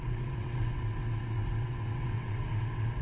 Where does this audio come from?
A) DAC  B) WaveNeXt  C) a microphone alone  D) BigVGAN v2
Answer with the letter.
B